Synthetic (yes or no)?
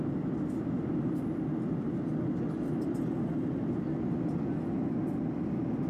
no